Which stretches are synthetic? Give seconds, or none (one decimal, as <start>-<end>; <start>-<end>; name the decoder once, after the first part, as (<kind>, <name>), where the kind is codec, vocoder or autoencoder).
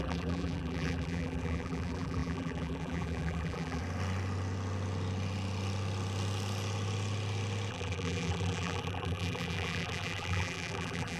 0.0-3.8 (vocoder, BigVGAN v2); 7.7-11.2